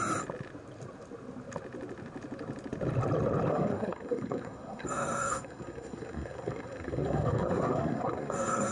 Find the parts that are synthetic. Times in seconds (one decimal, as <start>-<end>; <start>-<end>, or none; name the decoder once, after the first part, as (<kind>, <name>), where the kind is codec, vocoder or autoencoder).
3.5-8.7 (codec, SNAC)

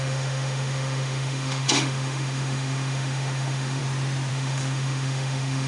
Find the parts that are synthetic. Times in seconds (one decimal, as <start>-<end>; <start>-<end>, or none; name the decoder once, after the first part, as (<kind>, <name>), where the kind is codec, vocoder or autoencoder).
0.0-3.8 (autoencoder, DAC-VAE); 4.3-5.7

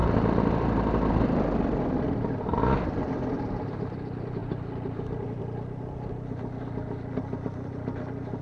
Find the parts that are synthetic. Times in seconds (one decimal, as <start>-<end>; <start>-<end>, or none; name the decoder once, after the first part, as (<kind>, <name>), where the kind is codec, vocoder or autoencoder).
none

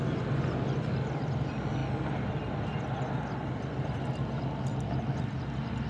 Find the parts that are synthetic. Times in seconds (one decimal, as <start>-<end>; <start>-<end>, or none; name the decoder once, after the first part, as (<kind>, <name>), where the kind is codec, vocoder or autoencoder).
none

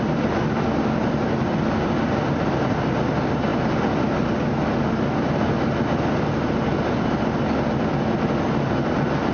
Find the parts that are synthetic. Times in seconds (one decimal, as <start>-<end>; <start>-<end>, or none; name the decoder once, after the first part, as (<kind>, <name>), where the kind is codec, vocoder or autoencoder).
none

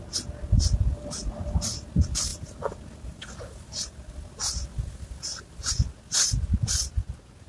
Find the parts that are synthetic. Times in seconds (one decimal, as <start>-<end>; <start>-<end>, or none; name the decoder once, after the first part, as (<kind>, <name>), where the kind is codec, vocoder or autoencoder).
none